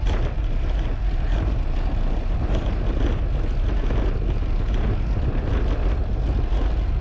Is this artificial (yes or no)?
no